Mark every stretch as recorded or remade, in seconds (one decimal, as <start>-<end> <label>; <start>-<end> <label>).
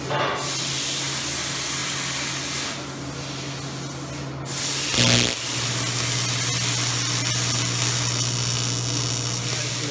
0.0-9.9 recorded